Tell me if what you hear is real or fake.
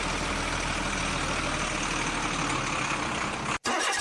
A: real